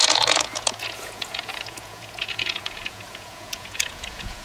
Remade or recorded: remade